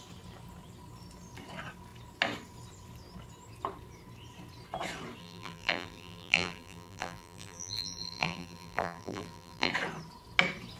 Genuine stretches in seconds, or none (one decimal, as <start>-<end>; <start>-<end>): 0.0-5.2; 9.7-10.8